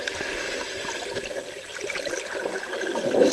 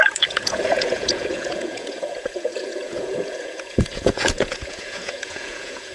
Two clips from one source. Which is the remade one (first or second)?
second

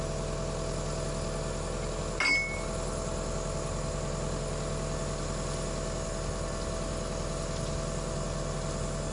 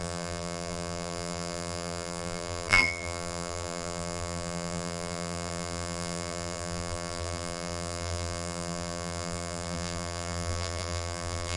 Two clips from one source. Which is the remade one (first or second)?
second